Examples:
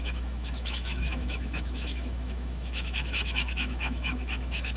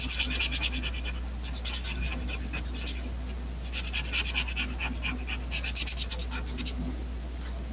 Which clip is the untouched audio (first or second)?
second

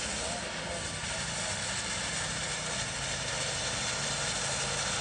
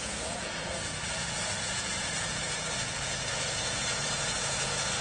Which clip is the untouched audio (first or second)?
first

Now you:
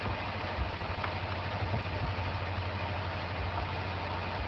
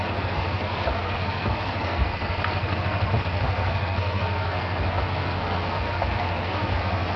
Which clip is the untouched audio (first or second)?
first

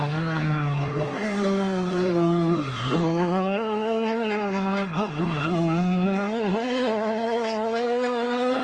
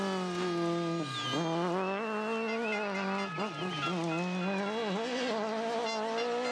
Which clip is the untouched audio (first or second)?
second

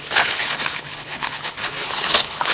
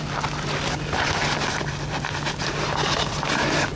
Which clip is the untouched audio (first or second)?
second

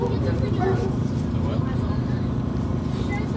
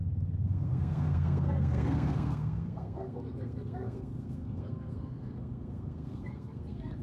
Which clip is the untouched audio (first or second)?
first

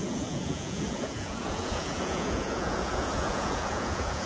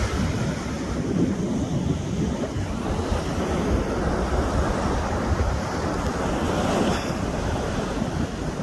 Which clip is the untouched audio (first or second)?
second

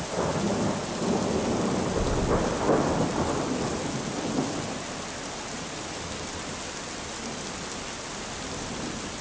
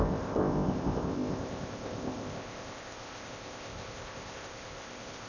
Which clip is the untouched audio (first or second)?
first